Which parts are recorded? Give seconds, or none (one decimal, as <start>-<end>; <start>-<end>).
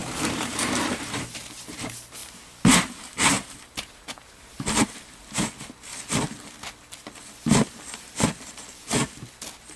1.2-2.2; 5.4-9.8